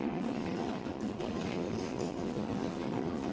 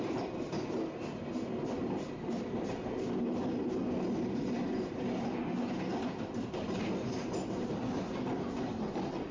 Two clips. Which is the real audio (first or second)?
second